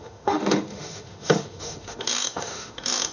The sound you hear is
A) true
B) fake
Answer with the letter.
B